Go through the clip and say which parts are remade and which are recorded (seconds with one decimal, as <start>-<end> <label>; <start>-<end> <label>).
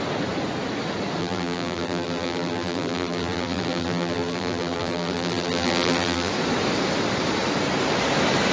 0.0-1.2 recorded; 1.2-6.3 remade; 6.3-8.5 recorded